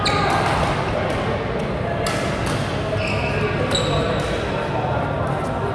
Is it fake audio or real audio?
real